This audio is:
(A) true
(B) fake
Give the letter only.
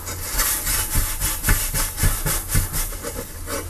A